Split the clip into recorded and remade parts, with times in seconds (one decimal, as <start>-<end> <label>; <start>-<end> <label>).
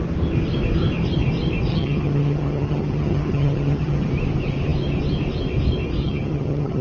0.0-1.7 recorded; 1.7-4.1 remade; 4.1-6.0 recorded; 6.0-6.8 remade